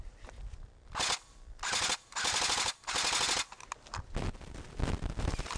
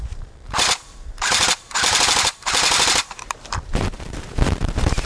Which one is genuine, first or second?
first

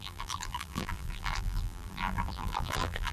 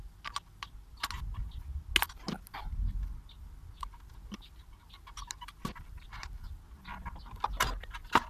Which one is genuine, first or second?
second